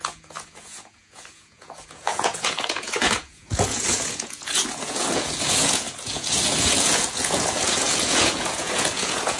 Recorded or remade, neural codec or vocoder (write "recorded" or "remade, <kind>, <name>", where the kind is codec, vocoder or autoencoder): remade, vocoder, Vocos